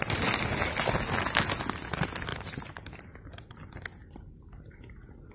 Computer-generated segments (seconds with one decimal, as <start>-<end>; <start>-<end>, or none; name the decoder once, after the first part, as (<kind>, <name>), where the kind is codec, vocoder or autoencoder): none